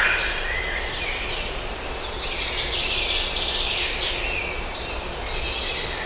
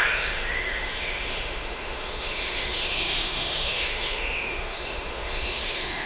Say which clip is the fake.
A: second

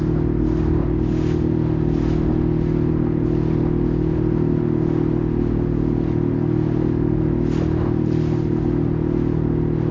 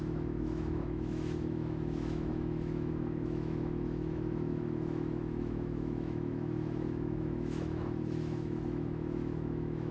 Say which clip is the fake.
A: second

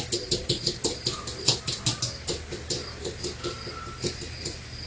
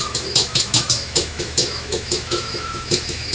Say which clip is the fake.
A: second